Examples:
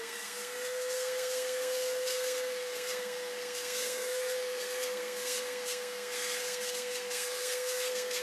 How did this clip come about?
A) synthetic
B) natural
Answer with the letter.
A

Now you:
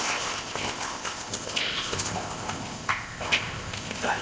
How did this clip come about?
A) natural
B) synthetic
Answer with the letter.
B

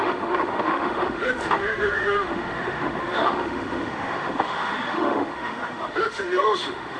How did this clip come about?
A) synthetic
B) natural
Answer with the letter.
A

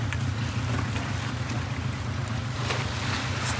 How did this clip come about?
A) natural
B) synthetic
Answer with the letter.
A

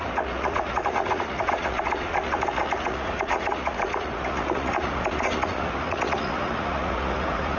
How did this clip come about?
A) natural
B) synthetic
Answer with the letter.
B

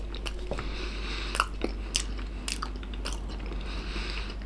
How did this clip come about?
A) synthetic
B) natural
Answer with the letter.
B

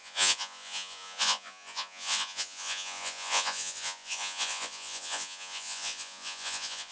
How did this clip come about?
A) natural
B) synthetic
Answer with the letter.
B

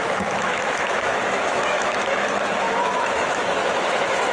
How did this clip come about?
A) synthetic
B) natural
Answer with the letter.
A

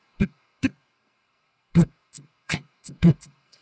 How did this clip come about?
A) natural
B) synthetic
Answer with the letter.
B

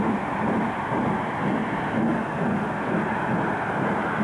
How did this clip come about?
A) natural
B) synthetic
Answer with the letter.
A